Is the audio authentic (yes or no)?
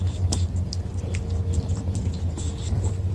yes